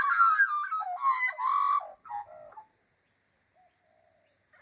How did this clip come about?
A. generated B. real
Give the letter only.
B